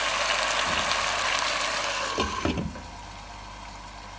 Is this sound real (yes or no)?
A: yes